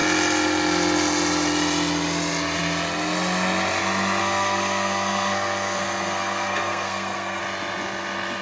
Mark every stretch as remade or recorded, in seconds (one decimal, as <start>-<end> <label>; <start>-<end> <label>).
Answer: 0.0-4.2 recorded; 4.2-7.4 remade; 7.4-8.4 recorded